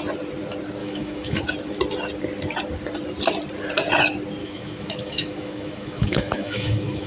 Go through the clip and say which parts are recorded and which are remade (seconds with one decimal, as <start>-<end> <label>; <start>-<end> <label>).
0.0-0.8 recorded; 0.8-1.4 remade; 1.4-4.4 recorded; 4.4-7.1 remade